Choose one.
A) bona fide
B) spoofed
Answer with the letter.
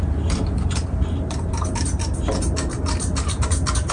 B